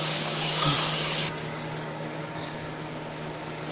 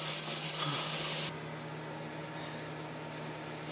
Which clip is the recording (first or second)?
second